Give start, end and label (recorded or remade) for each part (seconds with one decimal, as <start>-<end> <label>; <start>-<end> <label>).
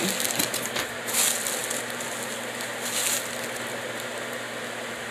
0.0-1.6 recorded; 1.6-3.0 remade; 3.0-5.1 recorded